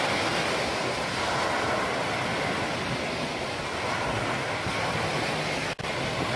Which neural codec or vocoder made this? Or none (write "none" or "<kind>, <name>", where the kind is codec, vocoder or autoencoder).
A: none